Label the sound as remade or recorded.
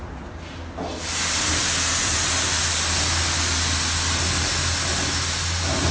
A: recorded